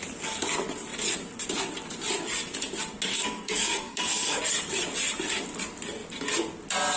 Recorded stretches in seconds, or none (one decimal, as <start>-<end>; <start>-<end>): 0.0-3.1; 4.4-7.0